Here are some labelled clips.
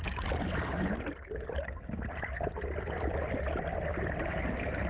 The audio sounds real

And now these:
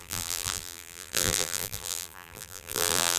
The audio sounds fake